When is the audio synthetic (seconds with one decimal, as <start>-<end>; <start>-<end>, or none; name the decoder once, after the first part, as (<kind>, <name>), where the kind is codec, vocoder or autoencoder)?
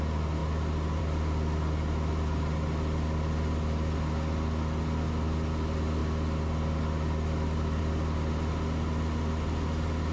none